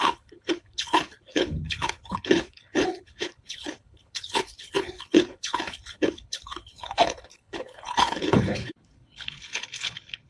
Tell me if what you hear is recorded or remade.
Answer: remade